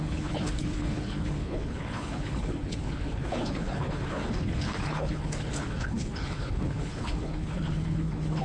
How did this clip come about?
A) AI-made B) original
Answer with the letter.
A